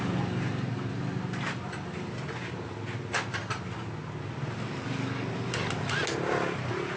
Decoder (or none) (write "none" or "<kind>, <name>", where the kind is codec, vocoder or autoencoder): none